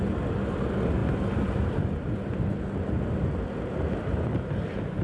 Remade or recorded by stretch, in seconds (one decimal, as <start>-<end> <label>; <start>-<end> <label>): 0.0-5.0 recorded